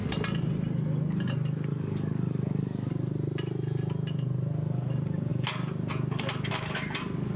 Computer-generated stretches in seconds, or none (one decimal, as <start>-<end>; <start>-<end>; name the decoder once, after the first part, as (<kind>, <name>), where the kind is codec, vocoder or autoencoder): 1.7-2.9 (codec, DAC)